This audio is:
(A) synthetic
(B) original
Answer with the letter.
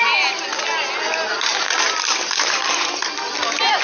B